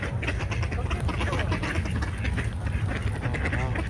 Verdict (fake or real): real